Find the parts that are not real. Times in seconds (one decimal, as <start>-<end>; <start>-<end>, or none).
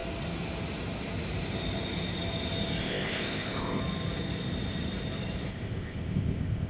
2.8-3.8; 5.5-6.7